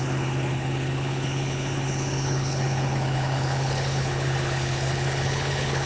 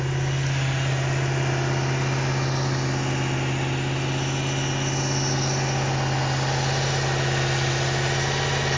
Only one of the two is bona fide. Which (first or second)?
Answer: second